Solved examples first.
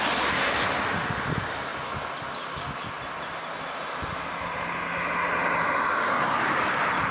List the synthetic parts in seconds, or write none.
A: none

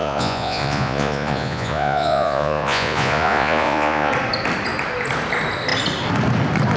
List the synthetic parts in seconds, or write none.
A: 0.0-4.1 (vocoder, Vocos)

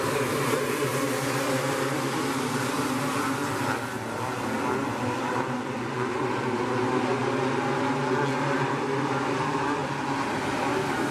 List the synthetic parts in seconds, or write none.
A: none

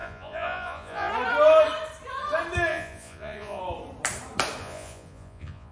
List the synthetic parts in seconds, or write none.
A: 0.0-1.1 (vocoder, Vocos); 2.7-3.6; 4.6-5.7

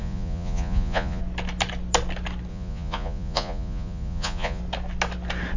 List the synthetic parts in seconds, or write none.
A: 0.0-1.2 (vocoder, Vocos); 2.5-4.6

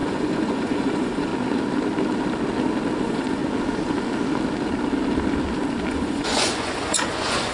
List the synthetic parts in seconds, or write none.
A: 0.0-1.3 (vocoder, Vocos); 3.0-3.4; 5.9-7.5

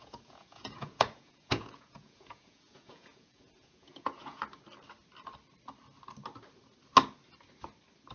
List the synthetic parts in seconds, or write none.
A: 0.0-4.4 (vocoder, Vocos)

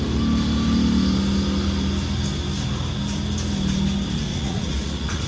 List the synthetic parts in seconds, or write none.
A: 4.3-5.3 (vocoder, Vocos)